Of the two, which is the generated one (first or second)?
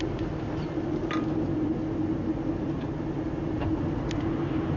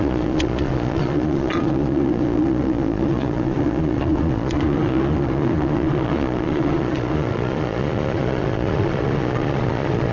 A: second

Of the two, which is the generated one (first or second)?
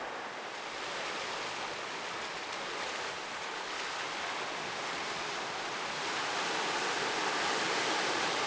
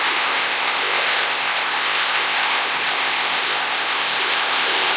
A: second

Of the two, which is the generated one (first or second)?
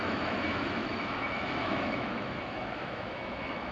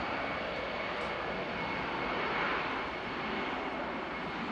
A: first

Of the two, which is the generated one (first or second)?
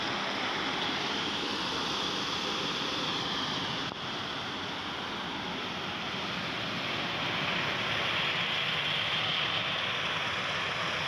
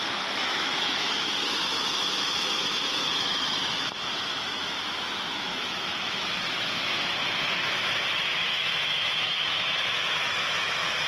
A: second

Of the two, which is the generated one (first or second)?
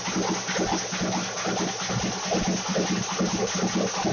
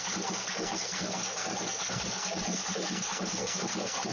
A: second